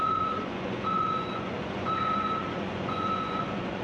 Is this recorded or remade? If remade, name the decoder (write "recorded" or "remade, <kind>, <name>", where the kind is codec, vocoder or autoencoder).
remade, vocoder, Vocos